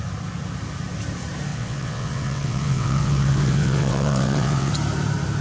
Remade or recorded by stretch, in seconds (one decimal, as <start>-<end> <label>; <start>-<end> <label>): 0.0-1.5 recorded; 1.5-4.7 remade; 4.7-5.4 recorded